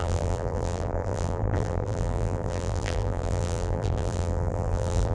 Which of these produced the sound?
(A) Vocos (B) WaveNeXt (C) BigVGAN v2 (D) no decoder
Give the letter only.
C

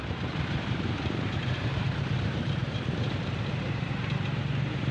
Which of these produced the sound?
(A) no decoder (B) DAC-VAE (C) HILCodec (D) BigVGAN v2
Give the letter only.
D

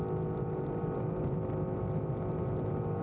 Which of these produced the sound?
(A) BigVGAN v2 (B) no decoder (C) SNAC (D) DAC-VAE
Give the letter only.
B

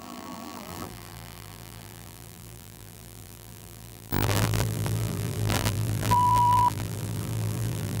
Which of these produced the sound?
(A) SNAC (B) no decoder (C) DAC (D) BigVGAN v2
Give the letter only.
D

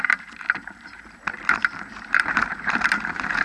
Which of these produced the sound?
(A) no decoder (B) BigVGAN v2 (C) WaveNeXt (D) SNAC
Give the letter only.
B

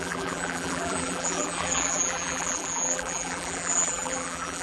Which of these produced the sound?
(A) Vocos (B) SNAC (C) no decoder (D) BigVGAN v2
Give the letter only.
D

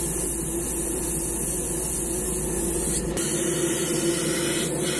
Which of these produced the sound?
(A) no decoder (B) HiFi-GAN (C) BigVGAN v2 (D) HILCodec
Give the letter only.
A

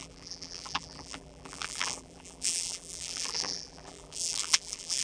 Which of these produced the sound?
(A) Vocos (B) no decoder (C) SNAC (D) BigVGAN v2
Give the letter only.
D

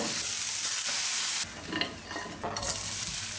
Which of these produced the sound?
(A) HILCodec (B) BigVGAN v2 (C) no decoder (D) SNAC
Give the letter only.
C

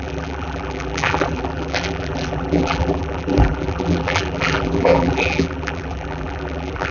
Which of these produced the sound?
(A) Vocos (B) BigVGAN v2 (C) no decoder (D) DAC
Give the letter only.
B